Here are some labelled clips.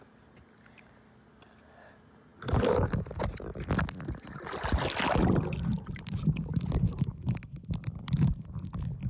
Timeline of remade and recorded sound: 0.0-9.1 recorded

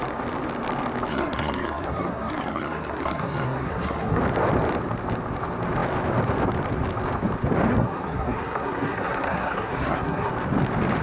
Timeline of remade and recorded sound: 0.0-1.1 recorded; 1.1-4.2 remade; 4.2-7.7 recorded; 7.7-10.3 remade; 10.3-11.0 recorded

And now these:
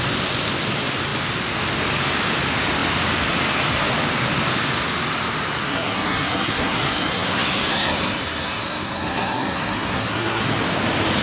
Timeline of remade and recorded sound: 0.0-5.6 recorded; 5.6-10.5 remade; 10.5-11.2 recorded

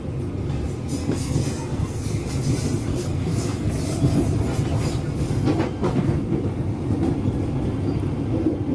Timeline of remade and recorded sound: 0.0-1.0 recorded; 1.0-2.3 remade; 2.3-2.9 recorded; 2.9-3.7 remade; 3.7-5.9 recorded; 5.9-6.5 remade; 6.5-8.7 recorded

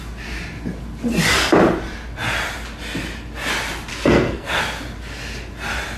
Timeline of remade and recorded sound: 0.0-3.9 recorded; 3.9-4.6 remade; 4.6-6.0 recorded

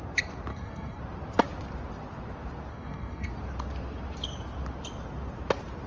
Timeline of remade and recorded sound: 0.0-0.5 recorded; 0.5-1.0 remade; 1.0-2.7 recorded; 2.7-3.3 remade; 3.3-5.9 recorded